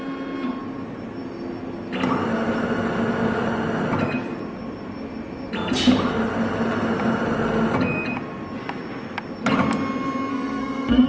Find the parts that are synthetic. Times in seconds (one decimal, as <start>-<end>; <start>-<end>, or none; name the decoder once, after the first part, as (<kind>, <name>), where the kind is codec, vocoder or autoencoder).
10.3-11.1 (codec, SNAC)